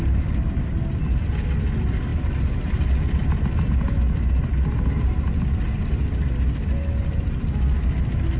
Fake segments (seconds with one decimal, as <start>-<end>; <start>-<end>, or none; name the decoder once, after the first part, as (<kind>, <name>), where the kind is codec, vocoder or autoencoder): none